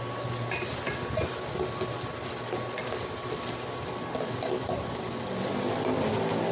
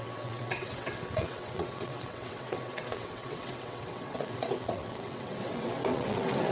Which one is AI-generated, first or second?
second